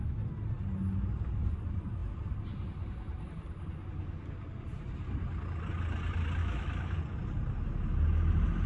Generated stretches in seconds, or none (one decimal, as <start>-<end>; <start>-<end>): 6.4-7.0